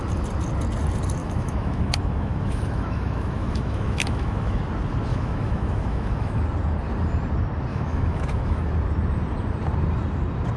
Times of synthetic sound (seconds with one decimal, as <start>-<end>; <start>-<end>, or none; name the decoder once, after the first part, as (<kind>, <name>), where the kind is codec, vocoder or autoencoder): 1.2-4.6 (autoencoder, DAC-VAE); 5.1-6.4; 7.7-8.7